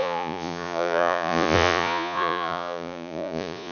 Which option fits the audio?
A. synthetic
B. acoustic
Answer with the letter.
A